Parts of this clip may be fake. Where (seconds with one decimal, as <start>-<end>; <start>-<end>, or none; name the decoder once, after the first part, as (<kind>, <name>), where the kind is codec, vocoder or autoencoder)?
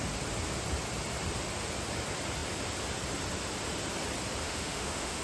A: 4.4-5.2 (autoencoder, DAC-VAE)